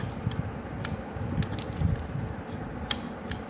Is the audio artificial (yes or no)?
no